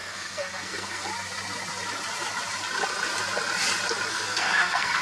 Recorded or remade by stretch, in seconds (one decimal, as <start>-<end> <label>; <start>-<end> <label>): 0.0-1.1 remade; 1.1-4.1 recorded; 4.1-5.0 remade